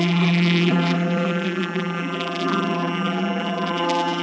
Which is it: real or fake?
fake